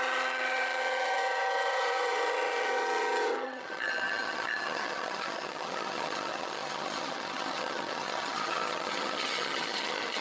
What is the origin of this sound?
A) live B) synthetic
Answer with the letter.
B